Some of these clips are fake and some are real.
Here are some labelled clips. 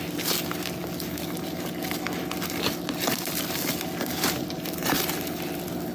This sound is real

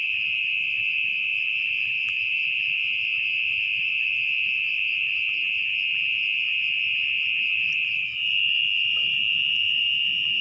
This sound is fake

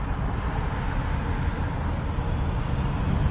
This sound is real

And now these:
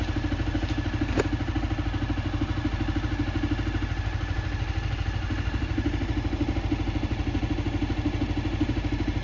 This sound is real